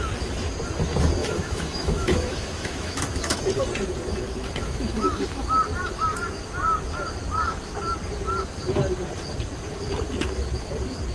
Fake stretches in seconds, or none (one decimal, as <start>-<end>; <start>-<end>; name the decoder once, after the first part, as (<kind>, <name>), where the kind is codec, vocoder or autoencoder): 1.2-3.4 (autoencoder, DAC-VAE); 4.6-5.5